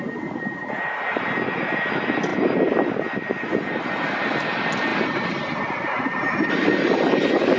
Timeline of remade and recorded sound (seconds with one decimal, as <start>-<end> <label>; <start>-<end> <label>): 0.0-7.6 recorded